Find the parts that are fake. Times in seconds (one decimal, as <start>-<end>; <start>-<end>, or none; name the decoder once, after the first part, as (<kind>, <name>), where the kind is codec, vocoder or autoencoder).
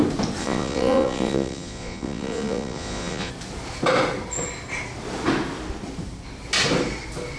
0.4-3.3 (vocoder, Vocos)